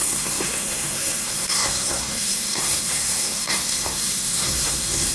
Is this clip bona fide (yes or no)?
no